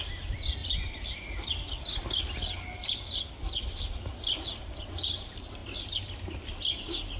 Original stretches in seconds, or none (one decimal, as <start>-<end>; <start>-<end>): 0.0-7.2